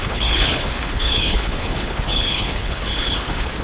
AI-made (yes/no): yes